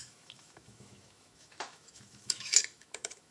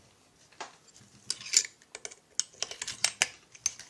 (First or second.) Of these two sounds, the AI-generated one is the first